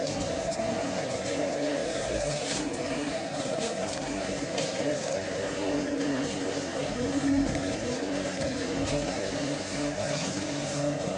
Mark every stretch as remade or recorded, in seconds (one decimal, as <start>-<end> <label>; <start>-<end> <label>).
0.0-11.2 remade